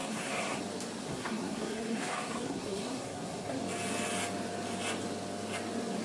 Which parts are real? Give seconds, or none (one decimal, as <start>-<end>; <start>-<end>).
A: 0.6-1.0; 3.6-6.0